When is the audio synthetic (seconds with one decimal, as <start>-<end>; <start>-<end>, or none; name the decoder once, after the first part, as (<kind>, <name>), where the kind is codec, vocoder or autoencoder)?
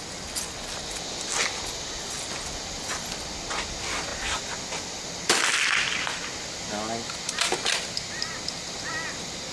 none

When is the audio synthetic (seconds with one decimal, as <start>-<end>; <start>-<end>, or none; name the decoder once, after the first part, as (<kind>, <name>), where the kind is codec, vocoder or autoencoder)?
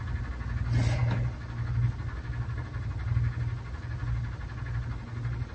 none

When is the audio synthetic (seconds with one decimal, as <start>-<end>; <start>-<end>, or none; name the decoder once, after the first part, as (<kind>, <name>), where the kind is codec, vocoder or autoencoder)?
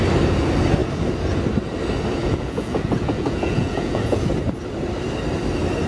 2.2-4.3 (vocoder, Vocos)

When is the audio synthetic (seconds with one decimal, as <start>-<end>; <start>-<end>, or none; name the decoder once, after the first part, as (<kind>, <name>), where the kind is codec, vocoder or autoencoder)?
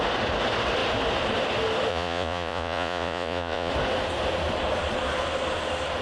1.9-3.7 (vocoder, Vocos)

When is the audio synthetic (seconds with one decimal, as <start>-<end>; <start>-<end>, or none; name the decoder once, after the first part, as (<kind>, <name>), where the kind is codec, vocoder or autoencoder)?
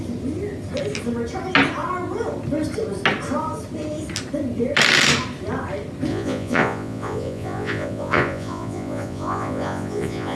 6.1-10.4 (vocoder, Vocos)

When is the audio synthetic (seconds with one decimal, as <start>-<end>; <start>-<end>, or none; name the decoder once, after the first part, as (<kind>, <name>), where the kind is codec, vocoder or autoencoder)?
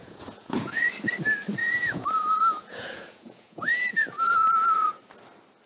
0.0-0.9 (vocoder, Vocos); 1.6-5.0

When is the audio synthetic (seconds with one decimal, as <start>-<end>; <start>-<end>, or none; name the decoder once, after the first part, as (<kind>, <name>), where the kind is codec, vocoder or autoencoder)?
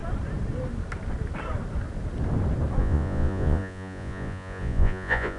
2.8-5.4 (vocoder, Vocos)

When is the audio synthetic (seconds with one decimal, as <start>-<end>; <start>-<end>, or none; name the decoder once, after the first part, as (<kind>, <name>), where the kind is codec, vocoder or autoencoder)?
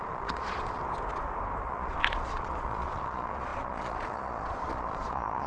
0.0-0.8 (vocoder, Vocos); 1.6-5.5